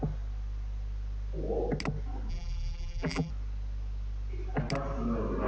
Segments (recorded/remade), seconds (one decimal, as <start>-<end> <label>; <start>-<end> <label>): 0.0-2.3 recorded; 2.3-3.3 remade; 3.3-5.5 recorded